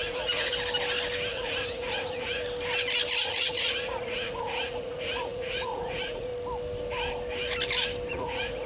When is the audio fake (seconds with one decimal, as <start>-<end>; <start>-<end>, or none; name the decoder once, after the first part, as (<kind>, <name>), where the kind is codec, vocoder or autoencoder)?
0.0-0.5 (vocoder, Vocos); 1.3-2.4; 3.2-6.3; 8.1-8.7